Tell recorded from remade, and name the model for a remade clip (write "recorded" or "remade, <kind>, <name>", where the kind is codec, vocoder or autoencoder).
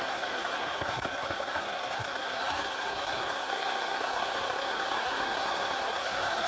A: remade, codec, SNAC